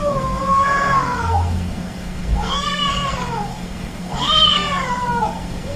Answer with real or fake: fake